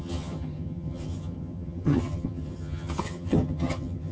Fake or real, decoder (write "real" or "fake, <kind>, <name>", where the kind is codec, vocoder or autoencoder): fake, vocoder, HiFi-GAN